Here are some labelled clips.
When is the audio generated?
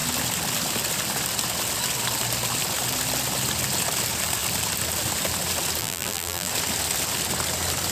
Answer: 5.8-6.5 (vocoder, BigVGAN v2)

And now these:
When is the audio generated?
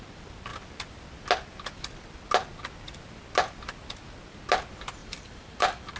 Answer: 5.0-6.0 (vocoder, BigVGAN v2)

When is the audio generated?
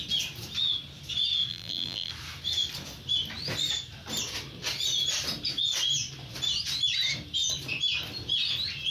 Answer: 1.5-2.1 (vocoder, BigVGAN v2)